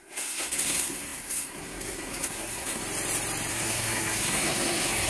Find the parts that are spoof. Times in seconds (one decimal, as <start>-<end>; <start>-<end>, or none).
0.0-2.8; 3.5-5.1

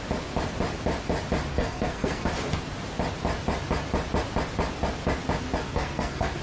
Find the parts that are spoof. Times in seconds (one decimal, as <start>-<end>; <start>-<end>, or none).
1.5-2.3; 5.6-6.4

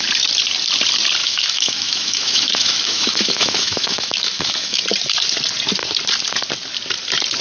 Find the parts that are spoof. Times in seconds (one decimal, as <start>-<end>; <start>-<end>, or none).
1.2-4.8

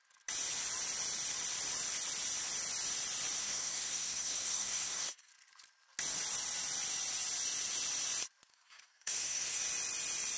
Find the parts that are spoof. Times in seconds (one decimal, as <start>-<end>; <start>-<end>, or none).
3.4-5.3; 8.5-9.6

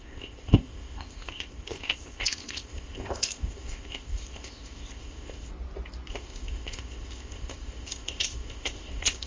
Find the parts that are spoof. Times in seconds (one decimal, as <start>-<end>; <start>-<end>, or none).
0.0-5.5; 6.1-9.3

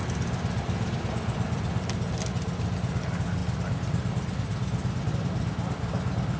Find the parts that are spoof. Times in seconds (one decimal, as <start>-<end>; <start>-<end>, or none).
none

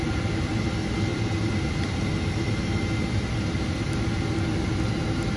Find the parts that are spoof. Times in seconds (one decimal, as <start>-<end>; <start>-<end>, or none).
1.1-1.7

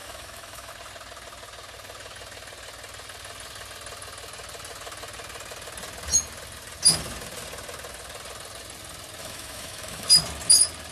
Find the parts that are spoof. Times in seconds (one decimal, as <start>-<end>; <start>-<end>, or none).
0.0-0.7; 9.2-10.1